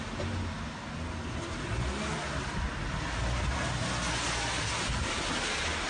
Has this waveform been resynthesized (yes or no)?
no